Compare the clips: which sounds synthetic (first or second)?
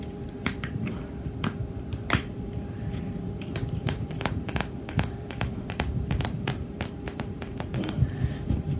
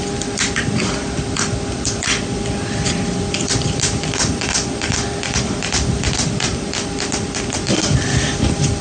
first